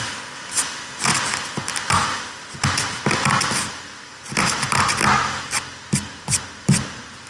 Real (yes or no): yes